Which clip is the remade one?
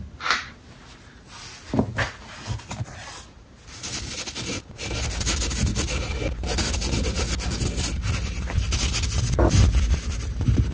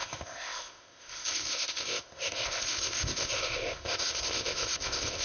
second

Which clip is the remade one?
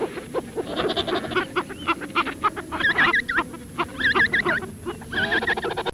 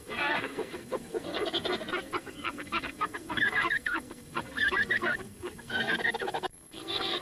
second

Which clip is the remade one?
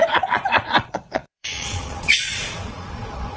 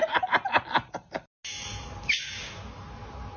first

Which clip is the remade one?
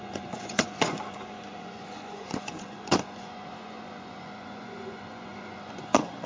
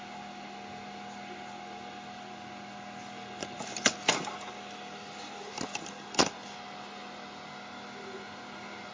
first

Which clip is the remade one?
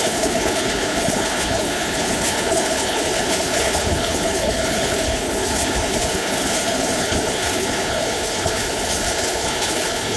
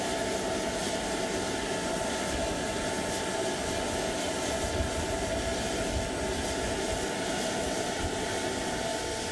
first